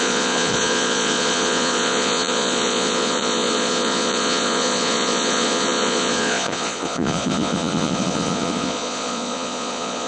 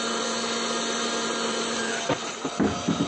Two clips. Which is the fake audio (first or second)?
first